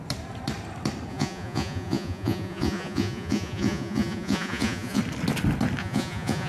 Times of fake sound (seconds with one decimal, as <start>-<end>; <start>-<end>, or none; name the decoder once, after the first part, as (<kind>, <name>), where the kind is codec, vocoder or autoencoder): 1.1-5.0 (vocoder, Vocos); 5.8-6.5